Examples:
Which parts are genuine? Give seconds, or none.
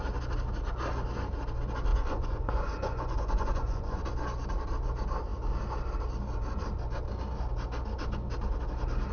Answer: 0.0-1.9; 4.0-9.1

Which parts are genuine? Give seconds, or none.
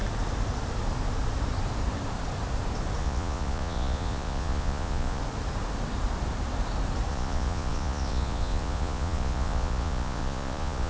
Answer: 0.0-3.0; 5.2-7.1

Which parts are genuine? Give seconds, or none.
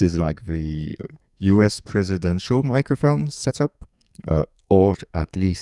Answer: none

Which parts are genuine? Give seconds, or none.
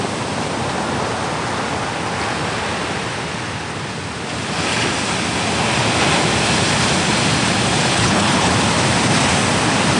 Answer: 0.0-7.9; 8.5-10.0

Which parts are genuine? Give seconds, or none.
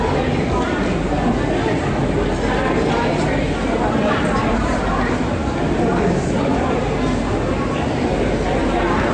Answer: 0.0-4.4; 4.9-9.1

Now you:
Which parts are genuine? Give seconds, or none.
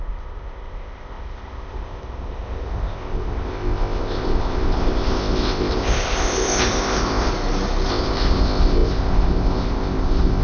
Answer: 7.3-7.9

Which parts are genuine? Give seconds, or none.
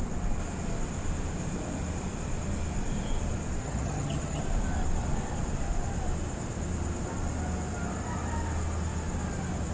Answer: 0.0-3.6; 4.4-9.7